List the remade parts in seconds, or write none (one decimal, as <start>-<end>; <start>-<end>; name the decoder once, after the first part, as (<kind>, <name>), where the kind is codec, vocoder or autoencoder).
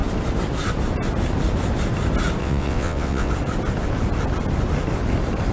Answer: 2.4-3.3 (vocoder, WaveNeXt)